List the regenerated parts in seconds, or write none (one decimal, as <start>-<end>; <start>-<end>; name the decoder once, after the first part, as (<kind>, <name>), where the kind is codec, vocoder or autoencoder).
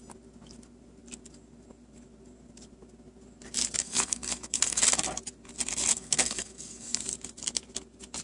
3.8-4.8 (codec, SNAC); 5.9-7.0